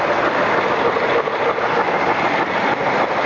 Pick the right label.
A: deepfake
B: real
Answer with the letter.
B